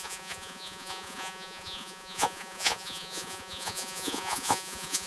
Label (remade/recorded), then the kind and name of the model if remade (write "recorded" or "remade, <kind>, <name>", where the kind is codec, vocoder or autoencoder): remade, vocoder, Vocos